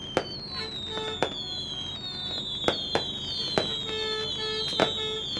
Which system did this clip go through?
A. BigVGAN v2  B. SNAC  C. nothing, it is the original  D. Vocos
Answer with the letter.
C